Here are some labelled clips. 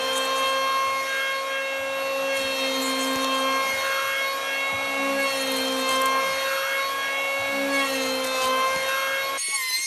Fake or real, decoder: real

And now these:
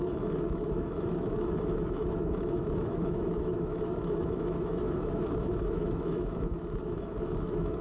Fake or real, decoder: fake, autoencoder, DAC-VAE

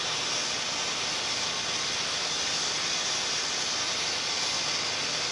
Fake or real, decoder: real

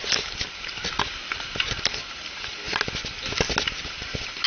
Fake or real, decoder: real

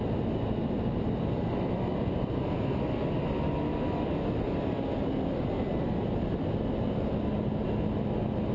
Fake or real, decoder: real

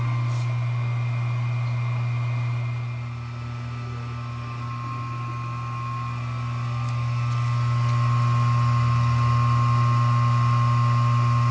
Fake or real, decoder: real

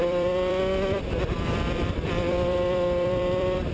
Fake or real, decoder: fake, vocoder, BigVGAN v2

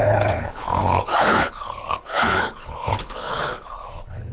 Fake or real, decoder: fake, codec, HILCodec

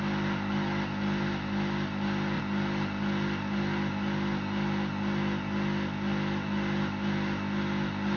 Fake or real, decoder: real